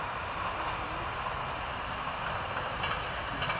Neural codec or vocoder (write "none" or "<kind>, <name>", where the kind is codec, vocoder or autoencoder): none